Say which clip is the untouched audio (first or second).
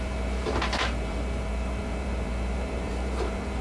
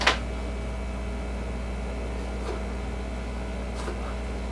second